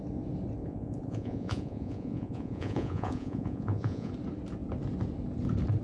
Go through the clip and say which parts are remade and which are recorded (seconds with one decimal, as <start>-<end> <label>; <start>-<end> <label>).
0.0-0.6 recorded; 0.6-4.1 remade; 4.1-5.8 recorded